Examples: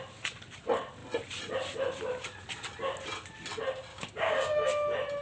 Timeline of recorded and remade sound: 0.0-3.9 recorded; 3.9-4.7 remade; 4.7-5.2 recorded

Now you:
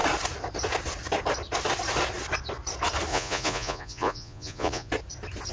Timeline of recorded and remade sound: 0.0-3.1 recorded; 3.1-4.9 remade; 4.9-5.5 recorded

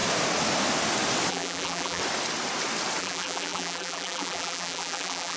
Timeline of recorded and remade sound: 0.0-1.3 recorded; 1.3-2.0 remade; 2.0-3.0 recorded; 3.0-5.4 remade

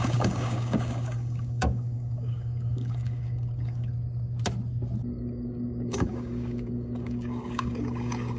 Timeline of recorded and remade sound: 0.0-3.9 remade; 3.9-5.0 recorded; 5.0-8.4 remade

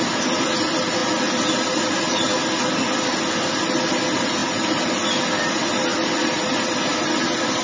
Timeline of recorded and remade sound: 0.0-7.6 recorded

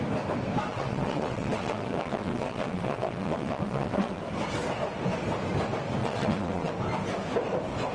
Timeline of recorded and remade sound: 0.0-0.7 recorded; 0.7-4.2 remade; 4.2-6.0 recorded; 6.0-6.7 remade; 6.7-7.9 recorded

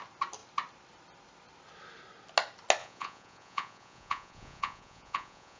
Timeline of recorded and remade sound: 0.0-2.8 recorded; 2.8-5.6 remade

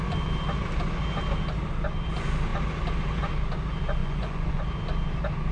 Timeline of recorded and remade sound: 0.0-4.0 recorded; 4.0-4.6 remade; 4.6-5.5 recorded